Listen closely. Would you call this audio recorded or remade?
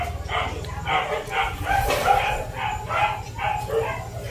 recorded